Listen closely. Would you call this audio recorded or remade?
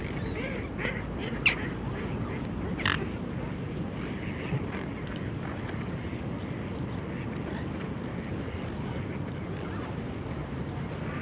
recorded